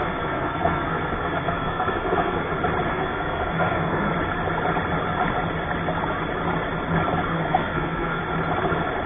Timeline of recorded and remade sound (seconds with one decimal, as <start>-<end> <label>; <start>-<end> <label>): 0.0-2.5 remade; 2.5-2.9 recorded; 2.9-4.1 remade; 4.1-7.3 recorded; 7.3-8.2 remade; 8.2-9.1 recorded

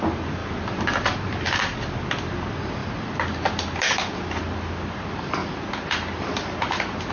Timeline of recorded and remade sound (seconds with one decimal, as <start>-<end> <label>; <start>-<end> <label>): 0.0-7.1 recorded